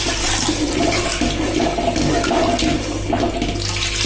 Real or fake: real